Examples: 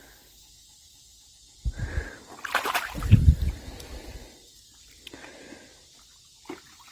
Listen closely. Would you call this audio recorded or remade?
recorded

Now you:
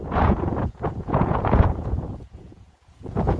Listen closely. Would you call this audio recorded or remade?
remade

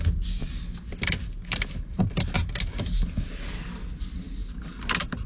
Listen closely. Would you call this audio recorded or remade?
recorded